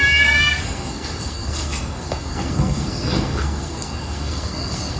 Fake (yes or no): yes